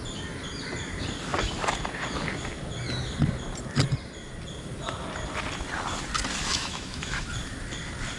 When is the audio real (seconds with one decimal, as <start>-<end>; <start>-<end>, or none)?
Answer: 0.0-6.5; 7.3-8.2